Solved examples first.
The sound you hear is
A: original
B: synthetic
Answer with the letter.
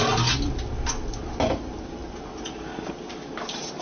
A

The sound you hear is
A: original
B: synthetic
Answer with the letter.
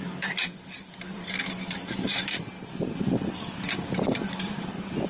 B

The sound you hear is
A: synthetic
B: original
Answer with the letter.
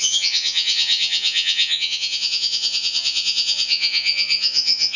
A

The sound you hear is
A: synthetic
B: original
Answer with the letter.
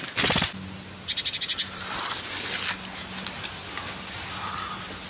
B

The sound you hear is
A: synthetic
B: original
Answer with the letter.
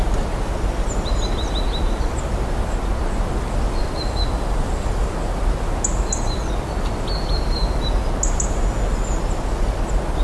B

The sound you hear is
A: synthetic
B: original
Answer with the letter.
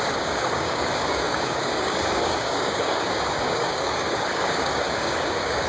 A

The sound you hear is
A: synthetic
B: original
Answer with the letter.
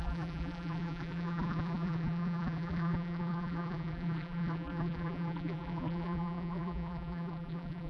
A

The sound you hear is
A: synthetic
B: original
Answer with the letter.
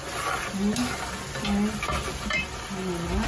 B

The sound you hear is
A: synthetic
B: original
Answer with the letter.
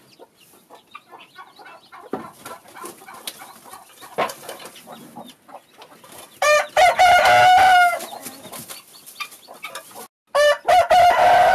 B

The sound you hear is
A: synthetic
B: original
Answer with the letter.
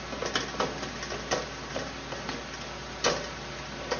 B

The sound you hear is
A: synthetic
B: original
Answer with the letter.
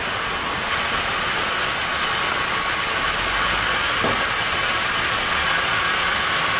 B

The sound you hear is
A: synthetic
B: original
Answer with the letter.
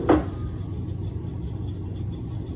B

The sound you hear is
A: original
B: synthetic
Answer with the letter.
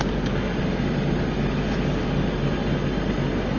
A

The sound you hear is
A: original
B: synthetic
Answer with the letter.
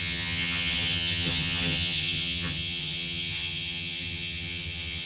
B